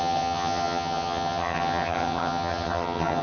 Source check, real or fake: fake